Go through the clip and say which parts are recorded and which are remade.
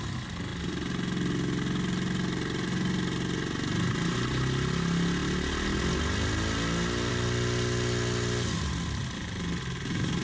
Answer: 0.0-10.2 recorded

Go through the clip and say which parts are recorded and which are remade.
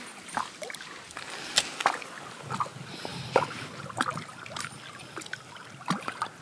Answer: 0.0-3.1 recorded; 3.1-4.4 remade; 4.4-6.4 recorded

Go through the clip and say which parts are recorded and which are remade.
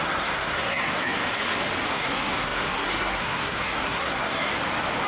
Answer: 0.0-1.2 remade; 1.2-1.9 recorded; 1.9-4.5 remade; 4.5-5.1 recorded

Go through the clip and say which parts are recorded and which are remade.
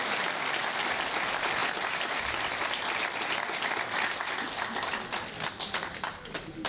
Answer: 0.0-6.7 recorded